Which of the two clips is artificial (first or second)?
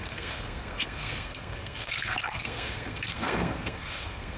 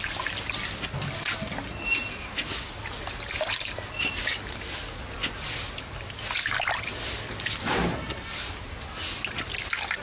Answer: first